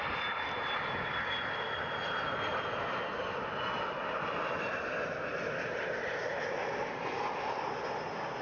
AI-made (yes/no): no